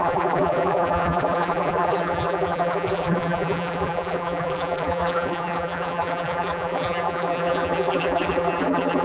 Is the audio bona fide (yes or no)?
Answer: no